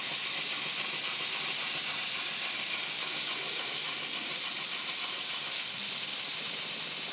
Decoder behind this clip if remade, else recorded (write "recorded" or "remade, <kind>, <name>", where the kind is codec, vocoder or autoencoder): recorded